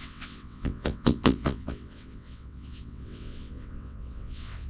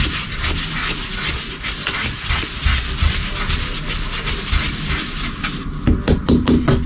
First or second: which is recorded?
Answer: second